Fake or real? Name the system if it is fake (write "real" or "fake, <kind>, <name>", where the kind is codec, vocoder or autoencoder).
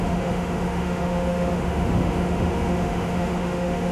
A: fake, autoencoder, DAC-VAE